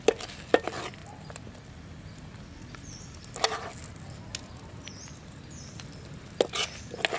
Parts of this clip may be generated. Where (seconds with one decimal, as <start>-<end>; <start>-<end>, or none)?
1.0-3.7